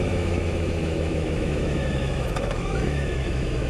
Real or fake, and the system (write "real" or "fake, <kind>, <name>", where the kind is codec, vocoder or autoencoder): fake, autoencoder, DAC-VAE